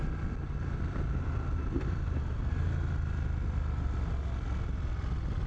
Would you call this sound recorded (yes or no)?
yes